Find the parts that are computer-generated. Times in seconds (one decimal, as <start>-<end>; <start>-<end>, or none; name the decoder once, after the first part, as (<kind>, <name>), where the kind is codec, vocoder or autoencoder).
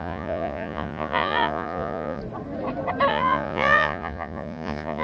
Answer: 0.0-2.2 (vocoder, Vocos); 3.1-5.0